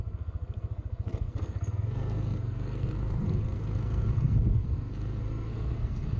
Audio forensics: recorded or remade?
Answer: remade